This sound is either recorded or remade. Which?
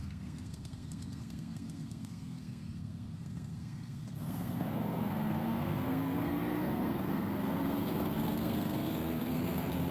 remade